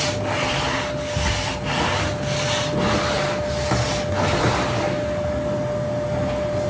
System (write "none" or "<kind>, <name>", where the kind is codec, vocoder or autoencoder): none